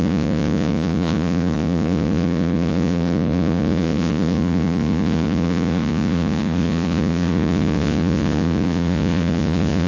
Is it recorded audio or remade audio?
remade